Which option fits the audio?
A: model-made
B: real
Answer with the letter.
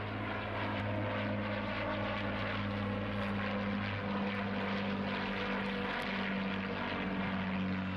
B